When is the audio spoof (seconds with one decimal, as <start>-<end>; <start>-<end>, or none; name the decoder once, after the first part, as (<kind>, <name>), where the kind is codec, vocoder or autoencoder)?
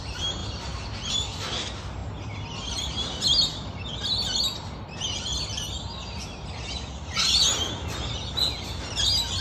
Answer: none